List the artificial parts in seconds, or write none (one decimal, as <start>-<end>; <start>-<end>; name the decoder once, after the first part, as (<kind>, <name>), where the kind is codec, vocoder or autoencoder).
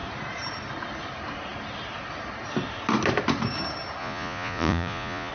4.0-5.3 (vocoder, Vocos)